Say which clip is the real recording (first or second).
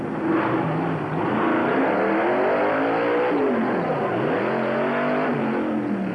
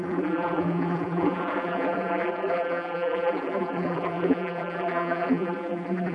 first